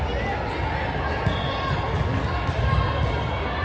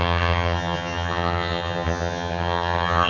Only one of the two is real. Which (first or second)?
first